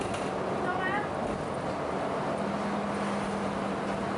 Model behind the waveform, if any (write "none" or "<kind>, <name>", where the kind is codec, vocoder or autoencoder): none